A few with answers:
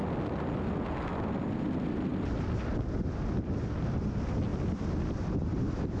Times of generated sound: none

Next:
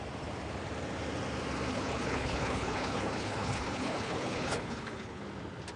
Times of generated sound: 1.7-5.2

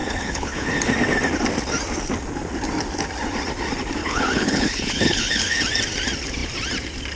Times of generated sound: 0.0-0.9; 4.0-5.6

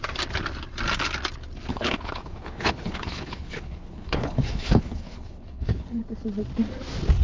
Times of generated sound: 1.7-6.0

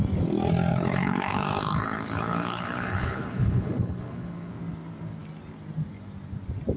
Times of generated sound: 0.7-4.5

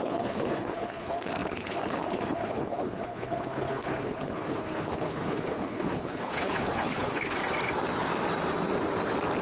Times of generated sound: 0.0-7.4

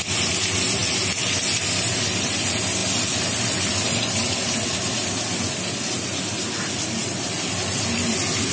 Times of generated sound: none

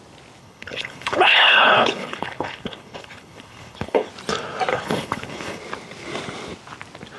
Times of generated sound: 0.4-4.1; 4.7-5.6